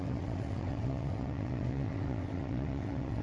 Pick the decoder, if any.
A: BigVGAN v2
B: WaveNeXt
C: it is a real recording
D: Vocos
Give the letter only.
B